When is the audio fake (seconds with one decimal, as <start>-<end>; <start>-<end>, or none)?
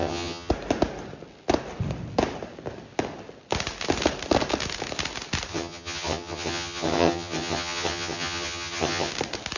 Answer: 0.0-0.5; 5.5-9.1